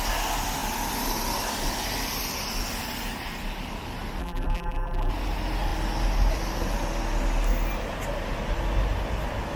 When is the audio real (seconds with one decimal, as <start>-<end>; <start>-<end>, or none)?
0.0-4.2; 5.1-9.6